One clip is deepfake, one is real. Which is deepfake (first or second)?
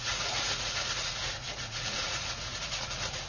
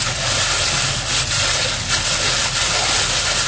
first